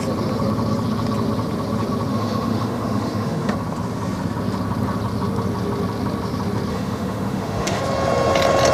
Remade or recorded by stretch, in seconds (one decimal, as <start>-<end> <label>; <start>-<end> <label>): 0.0-2.1 recorded; 2.1-3.5 remade; 3.5-6.7 recorded; 6.7-7.8 remade; 7.8-8.7 recorded